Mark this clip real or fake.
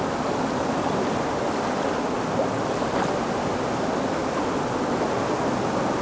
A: real